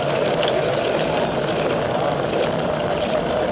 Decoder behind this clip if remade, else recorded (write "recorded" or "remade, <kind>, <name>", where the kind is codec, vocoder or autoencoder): recorded